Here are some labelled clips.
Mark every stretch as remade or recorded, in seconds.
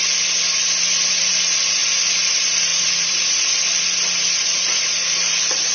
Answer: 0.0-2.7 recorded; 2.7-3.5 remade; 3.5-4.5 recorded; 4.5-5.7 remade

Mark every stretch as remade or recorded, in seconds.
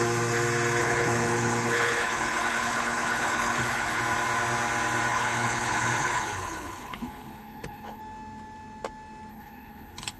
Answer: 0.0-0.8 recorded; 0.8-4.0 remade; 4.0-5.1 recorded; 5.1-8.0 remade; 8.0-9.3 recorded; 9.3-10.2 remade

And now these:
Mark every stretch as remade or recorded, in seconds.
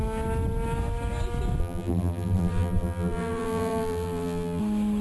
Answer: 0.0-1.6 recorded; 1.6-4.6 remade; 4.6-5.0 recorded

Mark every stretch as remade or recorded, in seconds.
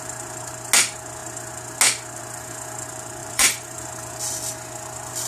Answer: 0.0-3.2 recorded; 3.2-3.9 remade; 3.9-5.3 recorded